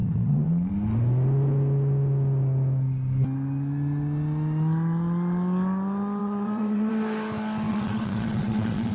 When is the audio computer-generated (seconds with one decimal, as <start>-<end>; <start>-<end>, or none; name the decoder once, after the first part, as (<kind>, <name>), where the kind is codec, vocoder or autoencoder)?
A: 0.0-0.7 (vocoder, Vocos); 6.2-6.9; 7.7-8.9